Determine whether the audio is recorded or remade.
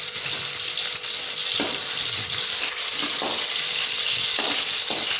recorded